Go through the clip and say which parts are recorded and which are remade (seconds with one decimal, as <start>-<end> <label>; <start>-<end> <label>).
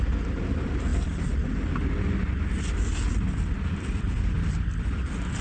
0.0-5.4 recorded